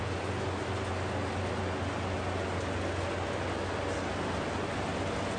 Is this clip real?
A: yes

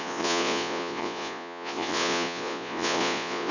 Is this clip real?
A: no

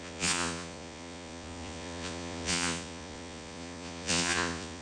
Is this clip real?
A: no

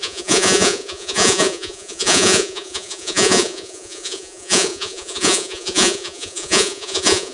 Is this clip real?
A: no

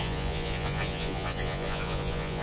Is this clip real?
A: no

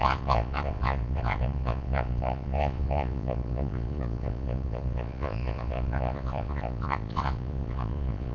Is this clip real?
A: no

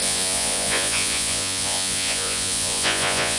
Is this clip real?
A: no